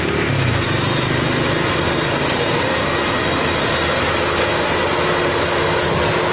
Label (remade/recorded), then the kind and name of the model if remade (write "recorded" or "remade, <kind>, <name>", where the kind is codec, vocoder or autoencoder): recorded